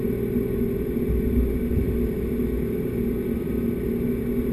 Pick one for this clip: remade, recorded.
recorded